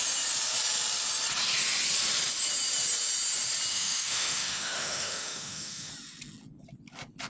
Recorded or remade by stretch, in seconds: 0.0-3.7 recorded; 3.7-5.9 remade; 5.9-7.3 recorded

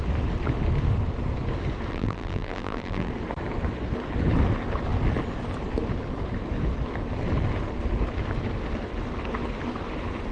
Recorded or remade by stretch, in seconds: 0.0-1.9 recorded; 1.9-3.1 remade; 3.1-10.3 recorded

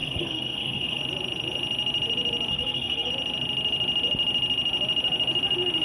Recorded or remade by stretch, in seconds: 0.0-1.0 remade; 1.0-2.5 recorded; 2.5-3.1 remade; 3.1-5.8 recorded